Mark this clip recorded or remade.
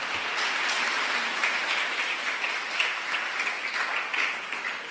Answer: recorded